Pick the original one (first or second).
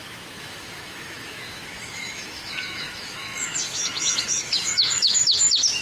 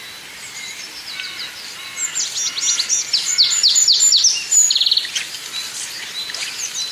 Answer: second